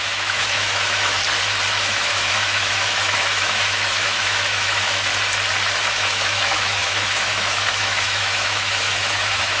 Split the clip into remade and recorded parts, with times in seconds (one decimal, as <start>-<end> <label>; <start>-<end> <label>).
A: 0.0-1.2 remade; 1.2-1.7 recorded; 1.7-5.1 remade; 5.1-5.9 recorded; 5.9-9.6 remade